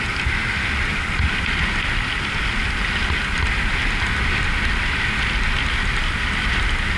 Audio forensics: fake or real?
real